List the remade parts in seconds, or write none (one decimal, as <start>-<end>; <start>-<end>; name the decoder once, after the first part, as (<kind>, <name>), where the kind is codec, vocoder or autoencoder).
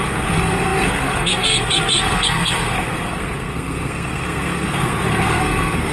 0.0-5.9 (codec, SNAC)